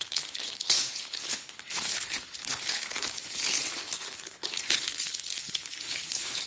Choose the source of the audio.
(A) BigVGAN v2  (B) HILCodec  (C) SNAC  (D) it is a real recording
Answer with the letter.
B